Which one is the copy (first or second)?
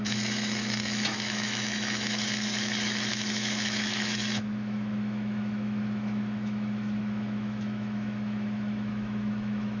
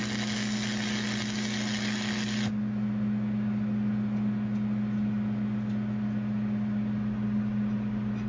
first